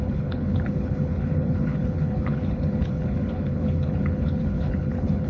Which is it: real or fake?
fake